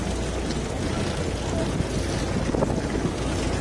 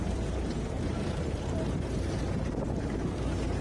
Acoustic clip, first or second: first